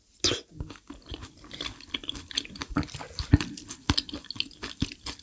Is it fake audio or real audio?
real